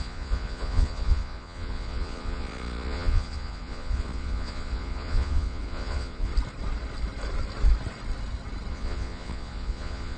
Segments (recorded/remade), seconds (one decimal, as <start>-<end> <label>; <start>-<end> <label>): 0.0-6.3 remade; 6.3-8.7 recorded; 8.7-10.2 remade